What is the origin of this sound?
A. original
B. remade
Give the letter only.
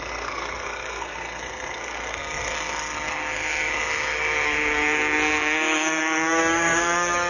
B